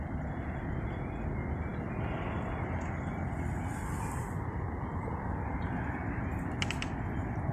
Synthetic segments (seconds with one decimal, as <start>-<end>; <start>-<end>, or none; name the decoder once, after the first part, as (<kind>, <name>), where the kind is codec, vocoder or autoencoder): none